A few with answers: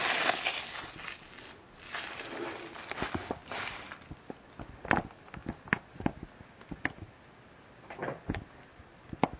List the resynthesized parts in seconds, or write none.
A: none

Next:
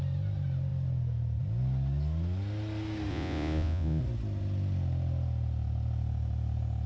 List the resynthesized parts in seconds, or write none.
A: 3.1-4.0

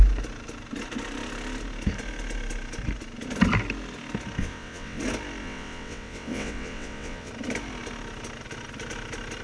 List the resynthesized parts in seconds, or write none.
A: 4.4-5.0; 5.4-7.3

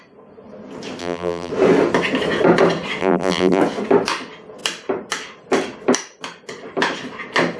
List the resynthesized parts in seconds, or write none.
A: 1.0-1.5; 3.0-3.6

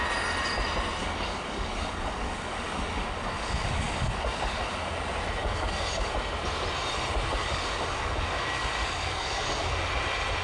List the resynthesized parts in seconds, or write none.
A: 1.0-4.9; 5.4-6.1; 7.4-9.8

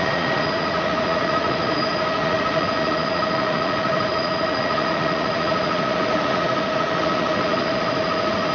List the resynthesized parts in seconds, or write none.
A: 0.0-8.5